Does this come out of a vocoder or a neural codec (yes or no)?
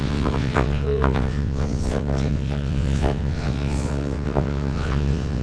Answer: yes